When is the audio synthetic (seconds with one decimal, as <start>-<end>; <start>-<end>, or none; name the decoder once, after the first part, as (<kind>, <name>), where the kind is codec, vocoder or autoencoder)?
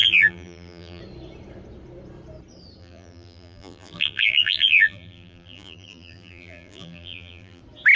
0.0-1.0 (vocoder, BigVGAN v2); 2.8-7.6